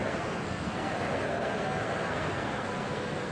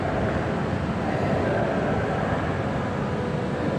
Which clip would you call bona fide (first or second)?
second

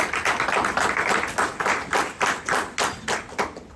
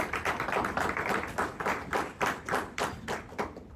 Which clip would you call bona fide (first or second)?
first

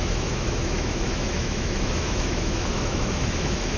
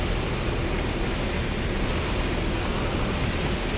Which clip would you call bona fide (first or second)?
second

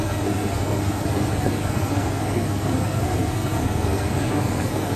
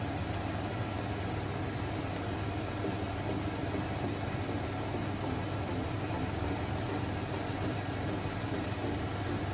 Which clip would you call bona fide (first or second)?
second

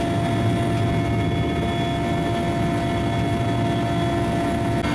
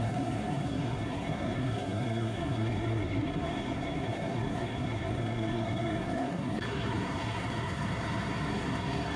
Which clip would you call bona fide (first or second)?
first